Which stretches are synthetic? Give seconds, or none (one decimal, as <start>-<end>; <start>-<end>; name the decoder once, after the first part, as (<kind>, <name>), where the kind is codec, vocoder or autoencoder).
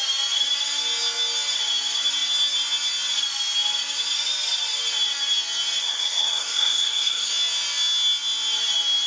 5.8-7.3 (codec, SNAC)